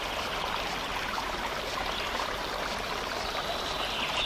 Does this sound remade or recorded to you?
recorded